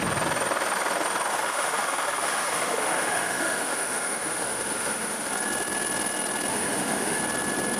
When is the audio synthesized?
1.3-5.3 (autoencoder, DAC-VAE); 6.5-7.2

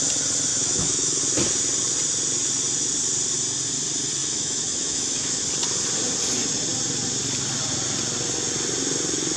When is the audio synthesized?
0.5-1.2 (autoencoder, DAC-VAE); 4.2-5.4

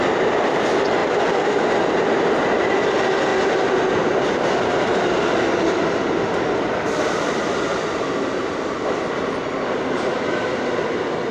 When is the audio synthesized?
none

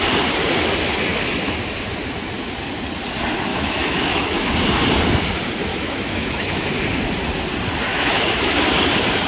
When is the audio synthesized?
3.5-4.5 (autoencoder, DAC-VAE); 5.7-6.7; 7.9-8.5